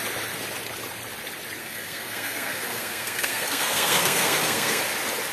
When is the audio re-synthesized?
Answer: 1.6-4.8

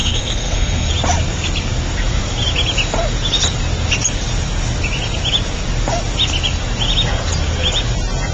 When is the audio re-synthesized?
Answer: 0.0-0.9

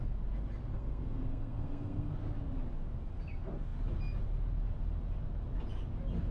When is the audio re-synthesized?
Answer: 0.7-2.1

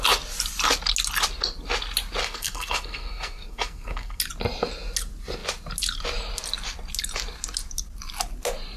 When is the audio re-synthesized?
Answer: 2.2-4.2